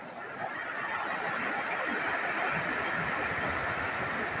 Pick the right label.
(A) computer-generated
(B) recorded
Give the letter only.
B